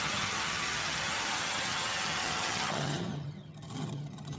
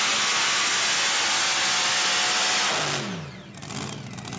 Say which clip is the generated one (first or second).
first